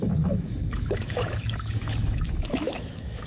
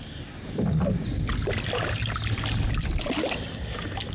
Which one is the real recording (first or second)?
second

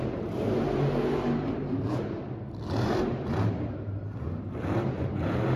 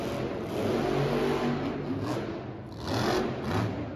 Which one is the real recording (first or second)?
second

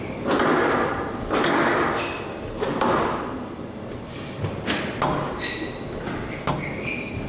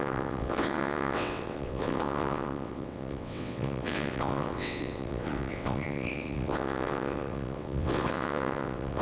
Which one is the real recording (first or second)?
first